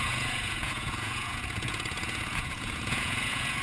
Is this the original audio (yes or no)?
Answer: no